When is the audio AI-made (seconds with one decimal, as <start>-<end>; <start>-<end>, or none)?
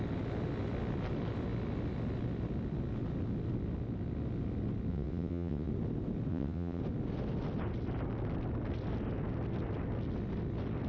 4.9-5.7; 6.3-6.8